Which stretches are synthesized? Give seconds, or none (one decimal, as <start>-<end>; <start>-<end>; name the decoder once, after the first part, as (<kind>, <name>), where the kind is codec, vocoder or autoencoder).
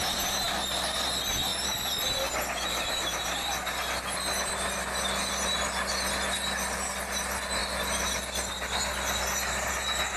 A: none